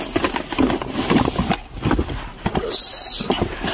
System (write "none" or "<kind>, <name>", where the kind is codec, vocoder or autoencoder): none